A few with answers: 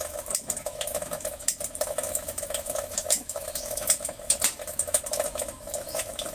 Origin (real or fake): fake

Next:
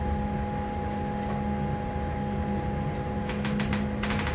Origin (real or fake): real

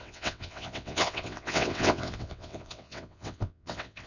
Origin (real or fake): fake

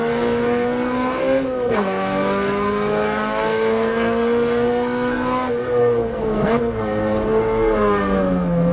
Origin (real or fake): fake